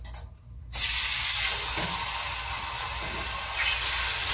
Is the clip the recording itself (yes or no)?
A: yes